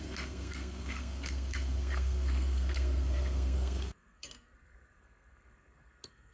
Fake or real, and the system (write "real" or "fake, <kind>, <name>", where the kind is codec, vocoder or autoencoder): fake, codec, SNAC